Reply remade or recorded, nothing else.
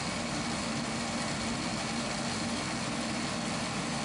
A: recorded